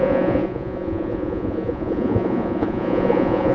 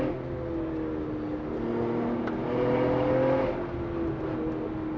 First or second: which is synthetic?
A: first